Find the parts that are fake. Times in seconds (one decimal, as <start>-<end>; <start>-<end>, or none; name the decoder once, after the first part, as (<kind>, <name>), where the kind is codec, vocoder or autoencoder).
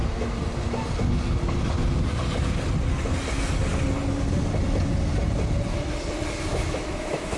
6.5-7.4 (autoencoder, DAC-VAE)